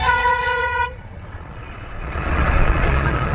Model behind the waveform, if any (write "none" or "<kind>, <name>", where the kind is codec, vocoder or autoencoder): vocoder, Vocos